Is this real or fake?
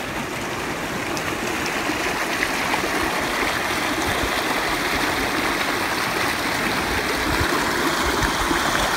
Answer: real